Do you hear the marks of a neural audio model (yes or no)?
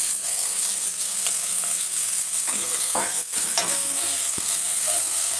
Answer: yes